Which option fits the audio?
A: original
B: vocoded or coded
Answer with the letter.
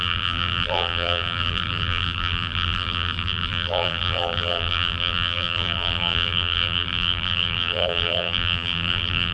B